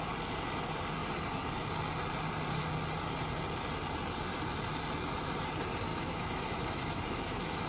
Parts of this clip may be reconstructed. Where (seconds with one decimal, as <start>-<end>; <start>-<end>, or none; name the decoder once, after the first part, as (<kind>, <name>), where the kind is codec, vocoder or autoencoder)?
5.9-7.7 (autoencoder, DAC-VAE)

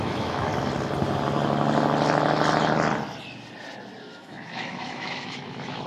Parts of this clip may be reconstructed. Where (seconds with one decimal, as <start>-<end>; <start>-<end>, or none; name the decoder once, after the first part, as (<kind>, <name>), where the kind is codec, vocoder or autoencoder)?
0.0-0.5 (autoencoder, DAC-VAE); 4.0-5.9

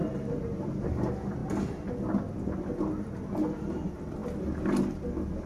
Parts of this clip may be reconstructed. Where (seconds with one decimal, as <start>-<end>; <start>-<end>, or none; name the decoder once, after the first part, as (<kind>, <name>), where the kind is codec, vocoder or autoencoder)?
none

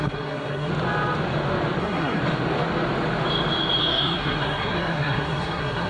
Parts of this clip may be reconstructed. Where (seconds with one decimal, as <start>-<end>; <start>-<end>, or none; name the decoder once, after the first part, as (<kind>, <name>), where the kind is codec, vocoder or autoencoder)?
0.0-0.7 (codec, SNAC); 1.8-2.2; 3.8-5.9

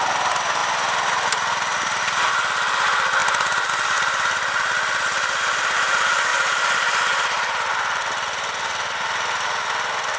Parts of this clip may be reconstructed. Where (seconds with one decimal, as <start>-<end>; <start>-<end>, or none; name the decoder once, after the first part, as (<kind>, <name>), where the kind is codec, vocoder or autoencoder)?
3.2-3.7 (vocoder, BigVGAN v2); 6.3-7.7

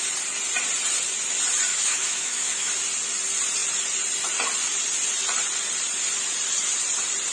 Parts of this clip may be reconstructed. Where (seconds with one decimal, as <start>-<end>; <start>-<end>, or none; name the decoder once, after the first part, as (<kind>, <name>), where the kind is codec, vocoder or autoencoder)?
1.7-2.7 (autoencoder, DAC-VAE)